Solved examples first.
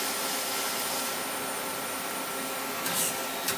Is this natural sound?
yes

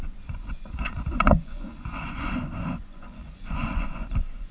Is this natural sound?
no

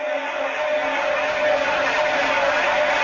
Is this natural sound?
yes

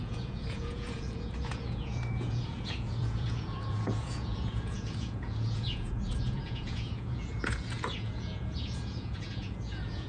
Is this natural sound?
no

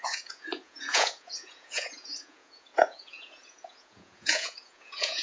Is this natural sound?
no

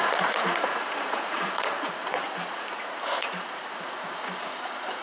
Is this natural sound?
no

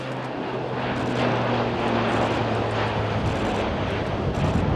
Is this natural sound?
yes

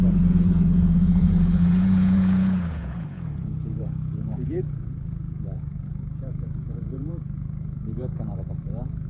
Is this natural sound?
no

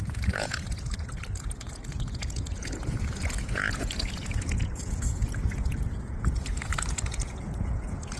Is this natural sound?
no